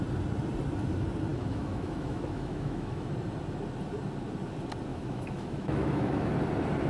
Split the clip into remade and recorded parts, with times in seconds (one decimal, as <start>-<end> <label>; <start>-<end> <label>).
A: 0.0-1.3 recorded; 1.3-3.1 remade; 3.1-4.9 recorded; 4.9-6.3 remade; 6.3-6.9 recorded